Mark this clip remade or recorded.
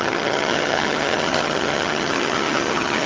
remade